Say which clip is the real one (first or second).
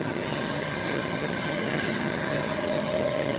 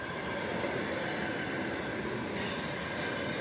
second